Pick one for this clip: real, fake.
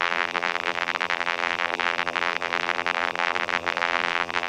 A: fake